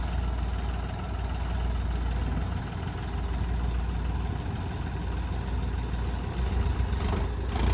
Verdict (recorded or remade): recorded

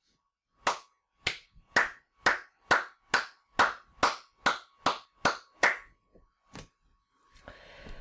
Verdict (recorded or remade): recorded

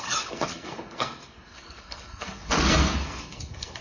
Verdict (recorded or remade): remade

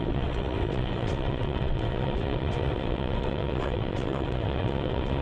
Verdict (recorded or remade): remade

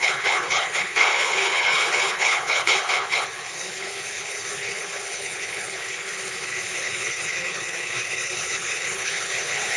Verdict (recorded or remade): remade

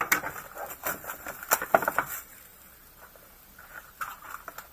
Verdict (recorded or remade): recorded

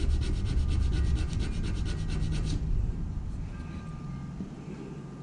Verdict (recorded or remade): recorded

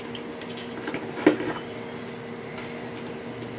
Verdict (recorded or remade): recorded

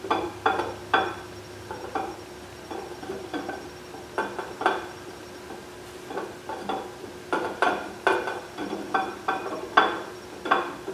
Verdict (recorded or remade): recorded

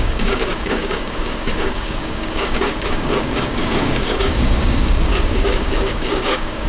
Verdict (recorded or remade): remade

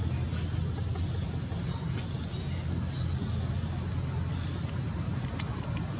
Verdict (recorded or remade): recorded